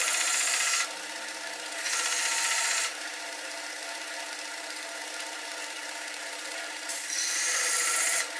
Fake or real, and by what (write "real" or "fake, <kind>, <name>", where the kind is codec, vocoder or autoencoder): fake, vocoder, BigVGAN v2